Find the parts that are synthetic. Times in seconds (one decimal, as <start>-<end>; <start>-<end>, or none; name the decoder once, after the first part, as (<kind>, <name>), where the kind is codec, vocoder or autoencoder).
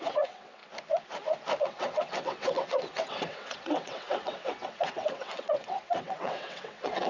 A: 0.0-0.6 (vocoder, WaveNeXt); 1.6-7.1